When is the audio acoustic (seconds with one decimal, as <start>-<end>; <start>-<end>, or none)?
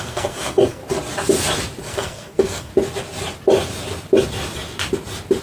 0.8-1.8; 2.7-5.4